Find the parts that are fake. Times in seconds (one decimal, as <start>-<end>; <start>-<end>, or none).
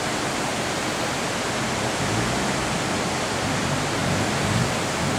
none